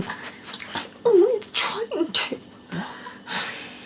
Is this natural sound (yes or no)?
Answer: yes